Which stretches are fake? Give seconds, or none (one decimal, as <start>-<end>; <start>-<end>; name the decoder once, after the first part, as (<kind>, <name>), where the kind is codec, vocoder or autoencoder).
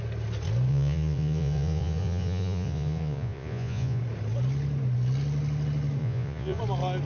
0.7-4.0 (vocoder, Vocos); 6.0-6.6